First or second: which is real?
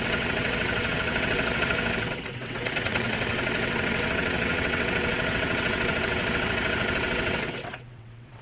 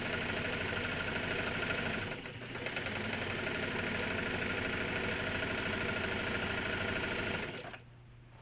second